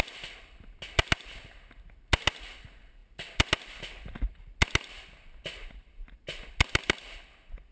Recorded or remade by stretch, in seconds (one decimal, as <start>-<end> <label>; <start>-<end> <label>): 0.0-7.7 recorded